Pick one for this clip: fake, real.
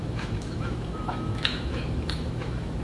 fake